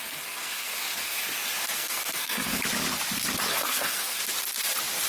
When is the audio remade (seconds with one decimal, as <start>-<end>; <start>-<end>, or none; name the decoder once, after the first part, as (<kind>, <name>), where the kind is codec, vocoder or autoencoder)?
0.0-2.6 (codec, SNAC); 3.5-4.2

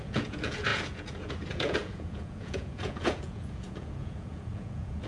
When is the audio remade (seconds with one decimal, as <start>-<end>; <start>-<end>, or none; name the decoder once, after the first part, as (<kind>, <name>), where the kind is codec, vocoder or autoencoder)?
0.0-5.1 (vocoder, Vocos)

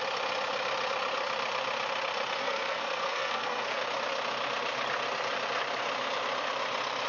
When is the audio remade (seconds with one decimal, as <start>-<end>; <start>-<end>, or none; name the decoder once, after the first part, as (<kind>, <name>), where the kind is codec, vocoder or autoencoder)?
2.4-3.8 (codec, SNAC)

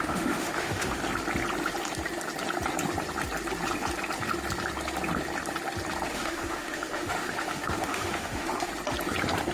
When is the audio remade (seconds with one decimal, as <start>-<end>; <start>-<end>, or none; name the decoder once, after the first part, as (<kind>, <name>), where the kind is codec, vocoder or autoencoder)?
0.0-1.0 (autoencoder, DAC-VAE); 6.1-8.7